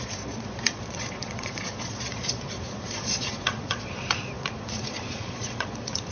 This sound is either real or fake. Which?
fake